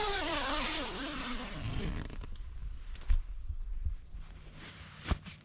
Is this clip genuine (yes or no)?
no